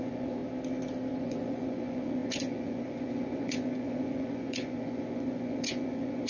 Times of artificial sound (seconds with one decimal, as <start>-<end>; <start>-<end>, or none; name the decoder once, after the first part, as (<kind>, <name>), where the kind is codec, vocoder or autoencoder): 0.0-0.4 (vocoder, Vocos); 1.2-6.3